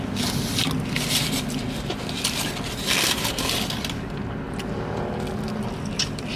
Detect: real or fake real